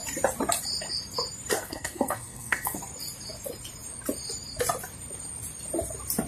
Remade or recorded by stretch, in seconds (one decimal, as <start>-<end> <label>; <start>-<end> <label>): 0.0-1.5 recorded; 1.5-2.8 remade; 2.8-6.3 recorded